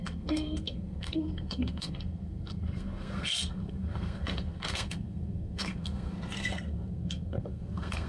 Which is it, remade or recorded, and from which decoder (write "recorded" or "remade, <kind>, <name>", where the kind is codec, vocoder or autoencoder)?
remade, codec, SNAC